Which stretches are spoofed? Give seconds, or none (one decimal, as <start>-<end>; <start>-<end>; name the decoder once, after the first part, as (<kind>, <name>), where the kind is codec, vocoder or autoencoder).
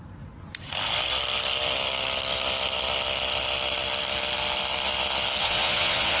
5.4-6.2 (vocoder, Vocos)